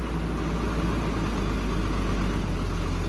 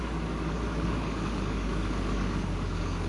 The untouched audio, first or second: first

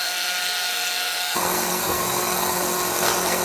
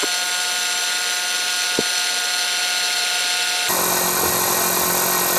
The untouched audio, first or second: second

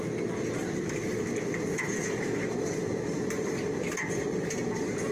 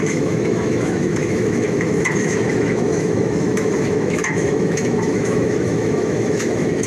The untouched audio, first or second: first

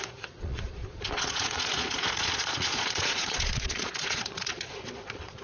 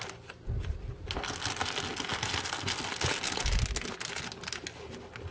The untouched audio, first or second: second